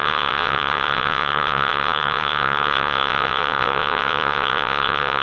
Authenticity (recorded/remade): remade